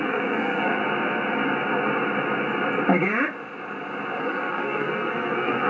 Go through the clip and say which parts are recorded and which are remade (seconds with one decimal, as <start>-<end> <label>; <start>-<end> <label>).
0.0-0.8 remade; 0.8-4.2 recorded; 4.2-5.7 remade